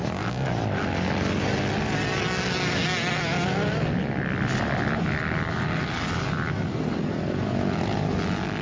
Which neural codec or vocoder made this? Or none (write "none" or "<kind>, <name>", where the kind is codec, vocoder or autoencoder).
none